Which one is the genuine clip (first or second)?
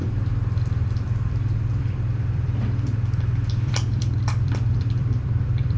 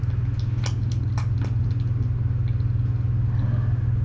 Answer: second